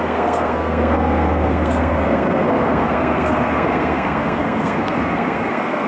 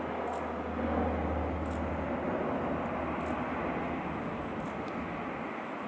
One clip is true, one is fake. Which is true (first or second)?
second